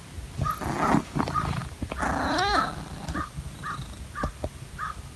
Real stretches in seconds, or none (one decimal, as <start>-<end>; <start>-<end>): 0.0-5.2